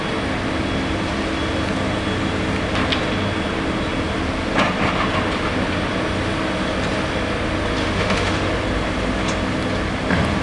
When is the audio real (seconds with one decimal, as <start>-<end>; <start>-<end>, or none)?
0.0-7.8; 8.5-10.4